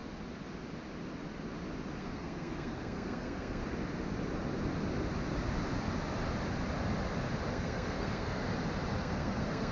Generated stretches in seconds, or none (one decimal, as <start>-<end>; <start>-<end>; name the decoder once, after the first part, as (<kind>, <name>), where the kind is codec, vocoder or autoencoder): 2.0-3.6 (codec, SNAC); 7.5-8.4; 9.0-9.7